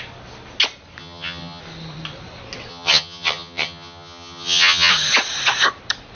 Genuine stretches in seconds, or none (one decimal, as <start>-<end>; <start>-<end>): 0.0-1.0; 1.6-2.7; 4.9-6.1